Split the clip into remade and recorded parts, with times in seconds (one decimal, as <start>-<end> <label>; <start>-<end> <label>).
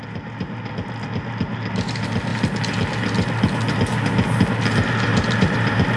0.0-5.1 recorded; 5.1-6.0 remade